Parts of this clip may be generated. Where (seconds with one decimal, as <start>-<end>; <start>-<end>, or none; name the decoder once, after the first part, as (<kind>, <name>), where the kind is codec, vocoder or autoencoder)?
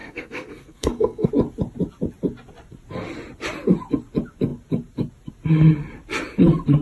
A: 0.0-1.3 (codec, SNAC)